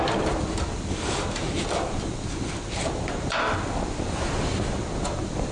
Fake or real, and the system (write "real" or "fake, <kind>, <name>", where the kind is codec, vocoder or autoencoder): real